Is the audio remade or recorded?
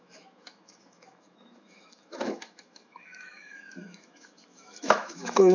remade